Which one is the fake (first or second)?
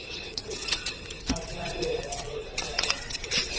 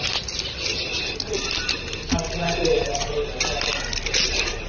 first